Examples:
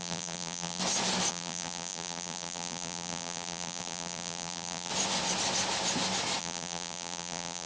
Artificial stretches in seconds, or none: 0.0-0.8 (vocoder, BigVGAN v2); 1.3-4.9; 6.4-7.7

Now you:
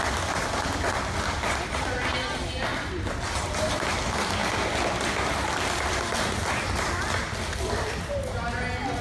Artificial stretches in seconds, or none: none

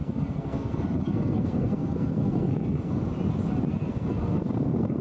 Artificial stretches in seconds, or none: 0.0-3.0 (codec, SNAC); 3.7-5.0

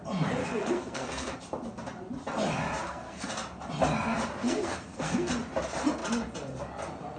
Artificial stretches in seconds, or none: 0.4-1.4 (codec, SNAC); 2.8-3.3; 4.4-5.3

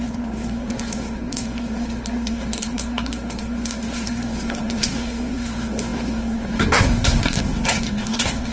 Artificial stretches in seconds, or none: 0.0-8.5 (codec, SNAC)

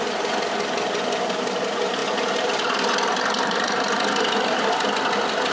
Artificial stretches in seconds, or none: none

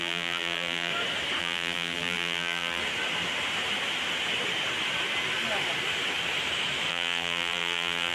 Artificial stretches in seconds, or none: 0.0-0.9 (vocoder, BigVGAN v2); 1.4-2.8; 6.9-8.1